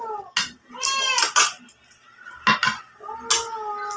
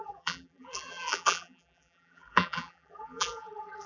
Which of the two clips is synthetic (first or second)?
second